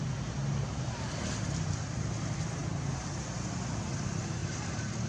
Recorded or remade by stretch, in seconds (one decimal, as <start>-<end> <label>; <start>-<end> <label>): 0.0-4.4 recorded; 4.4-5.1 remade